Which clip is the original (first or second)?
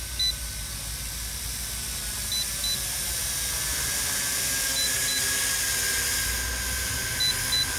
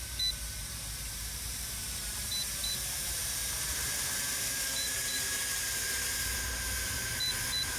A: first